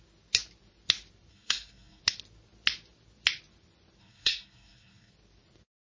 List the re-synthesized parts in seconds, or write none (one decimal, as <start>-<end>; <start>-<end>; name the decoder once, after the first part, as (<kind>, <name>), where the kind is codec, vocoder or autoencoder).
1.3-2.0 (codec, SNAC); 4.0-5.1